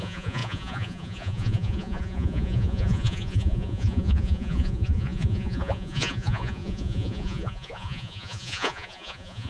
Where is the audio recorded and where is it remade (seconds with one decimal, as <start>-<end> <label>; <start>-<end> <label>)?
0.0-9.5 remade

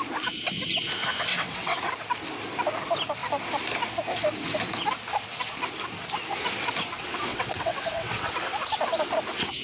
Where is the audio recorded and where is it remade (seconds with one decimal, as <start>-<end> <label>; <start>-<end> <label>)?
0.0-1.3 recorded; 1.3-1.8 remade; 1.8-7.3 recorded; 7.3-8.3 remade; 8.3-9.6 recorded

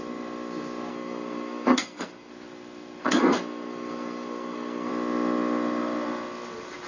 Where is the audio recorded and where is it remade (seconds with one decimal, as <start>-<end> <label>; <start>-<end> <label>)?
0.0-0.9 recorded; 0.9-2.3 remade; 2.3-3.0 recorded; 3.0-4.9 remade; 4.9-6.9 recorded

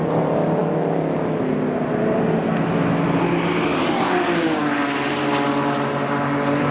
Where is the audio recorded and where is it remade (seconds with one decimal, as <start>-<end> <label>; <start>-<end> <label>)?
0.0-6.7 recorded